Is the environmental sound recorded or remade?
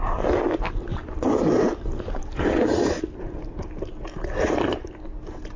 recorded